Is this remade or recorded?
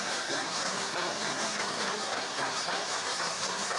remade